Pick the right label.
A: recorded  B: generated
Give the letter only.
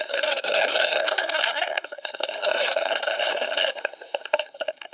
B